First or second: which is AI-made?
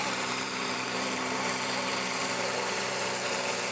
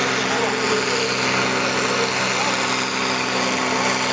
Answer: first